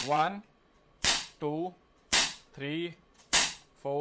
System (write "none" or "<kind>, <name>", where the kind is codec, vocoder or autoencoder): vocoder, Vocos